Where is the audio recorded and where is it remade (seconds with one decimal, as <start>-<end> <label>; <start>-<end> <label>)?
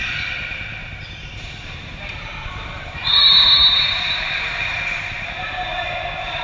0.0-6.4 remade